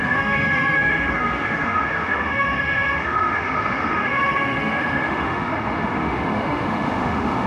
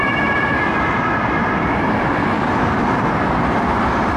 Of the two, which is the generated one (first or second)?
first